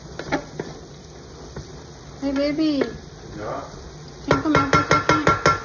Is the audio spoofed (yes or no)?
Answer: no